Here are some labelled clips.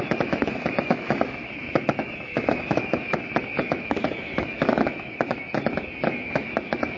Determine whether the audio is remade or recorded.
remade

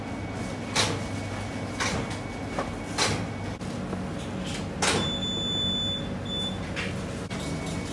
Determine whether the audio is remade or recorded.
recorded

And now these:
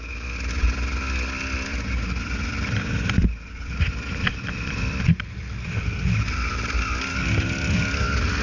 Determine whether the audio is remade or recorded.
recorded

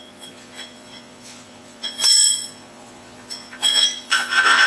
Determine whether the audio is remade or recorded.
remade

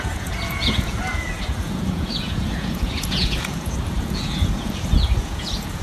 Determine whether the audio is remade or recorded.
remade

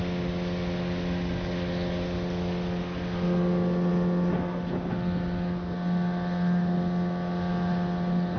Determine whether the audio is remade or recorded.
recorded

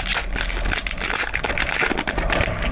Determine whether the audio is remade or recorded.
recorded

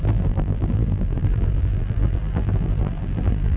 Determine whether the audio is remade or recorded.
remade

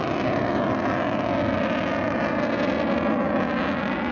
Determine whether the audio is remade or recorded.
recorded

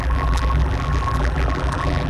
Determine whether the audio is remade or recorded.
remade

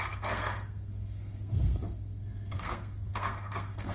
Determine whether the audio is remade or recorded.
remade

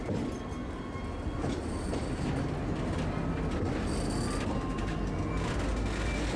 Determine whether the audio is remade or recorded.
recorded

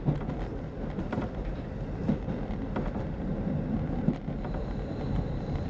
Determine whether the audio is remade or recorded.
recorded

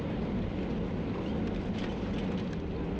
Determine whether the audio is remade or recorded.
recorded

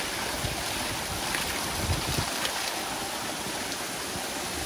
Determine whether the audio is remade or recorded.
recorded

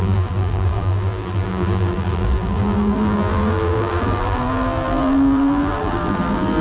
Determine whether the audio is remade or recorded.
remade